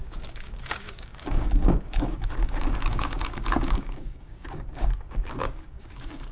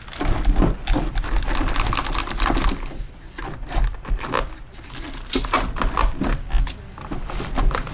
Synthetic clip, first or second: first